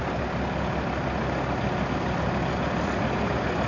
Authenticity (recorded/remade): recorded